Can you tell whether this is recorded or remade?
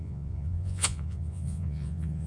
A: remade